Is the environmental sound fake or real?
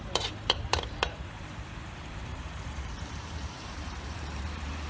fake